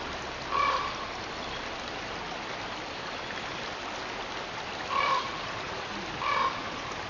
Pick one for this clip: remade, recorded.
recorded